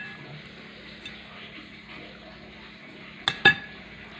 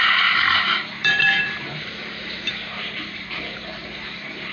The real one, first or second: first